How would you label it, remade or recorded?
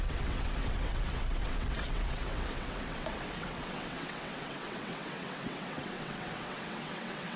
remade